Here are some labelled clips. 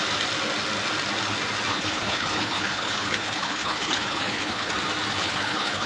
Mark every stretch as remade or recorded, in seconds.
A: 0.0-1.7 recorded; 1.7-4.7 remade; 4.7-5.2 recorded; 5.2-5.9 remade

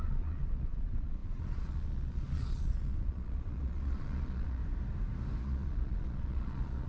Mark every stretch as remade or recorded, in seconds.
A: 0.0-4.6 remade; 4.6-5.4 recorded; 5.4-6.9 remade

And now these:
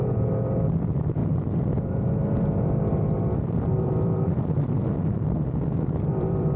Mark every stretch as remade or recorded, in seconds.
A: 0.0-6.6 remade

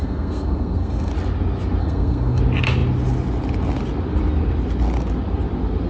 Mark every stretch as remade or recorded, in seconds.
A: 0.0-1.1 remade; 1.1-1.8 recorded; 1.8-2.4 remade; 2.4-5.9 recorded

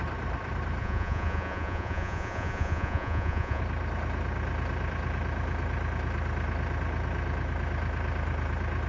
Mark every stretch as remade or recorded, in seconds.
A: 0.0-0.8 recorded; 0.8-3.6 remade; 3.6-8.9 recorded

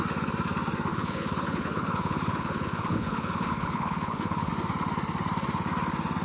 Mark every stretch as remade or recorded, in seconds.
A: 0.0-0.9 recorded; 0.9-4.5 remade; 4.5-6.2 recorded

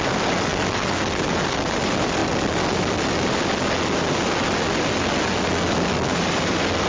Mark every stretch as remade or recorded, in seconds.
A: 0.0-6.9 recorded

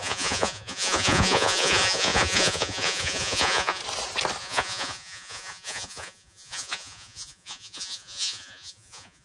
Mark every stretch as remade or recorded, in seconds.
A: 0.0-3.8 remade; 3.8-4.4 recorded; 4.4-9.2 remade